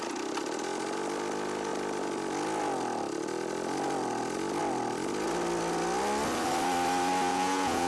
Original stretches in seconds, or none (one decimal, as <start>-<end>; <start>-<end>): 0.0-7.3